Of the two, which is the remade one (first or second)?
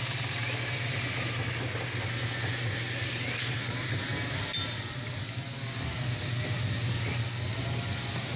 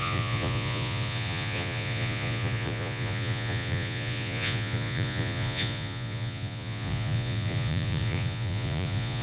second